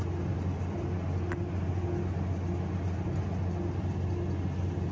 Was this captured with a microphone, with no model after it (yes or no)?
yes